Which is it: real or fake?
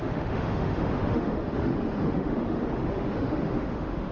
fake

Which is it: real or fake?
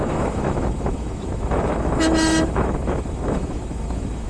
fake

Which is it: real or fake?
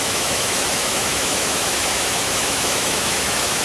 fake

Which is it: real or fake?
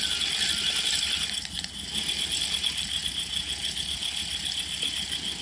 real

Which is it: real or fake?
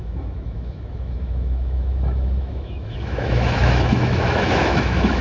fake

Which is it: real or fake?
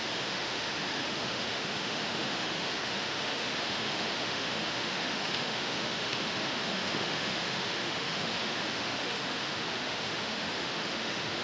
fake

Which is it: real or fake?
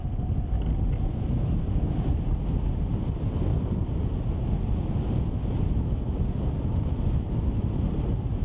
real